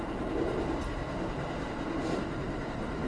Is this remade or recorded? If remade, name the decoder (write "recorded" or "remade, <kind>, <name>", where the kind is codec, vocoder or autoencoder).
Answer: remade, vocoder, BigVGAN v2